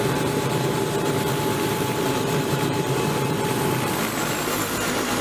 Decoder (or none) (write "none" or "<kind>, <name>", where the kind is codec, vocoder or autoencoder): vocoder, BigVGAN v2